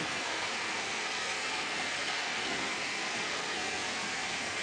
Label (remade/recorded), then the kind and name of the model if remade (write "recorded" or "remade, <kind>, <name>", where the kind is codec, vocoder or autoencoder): remade, codec, SNAC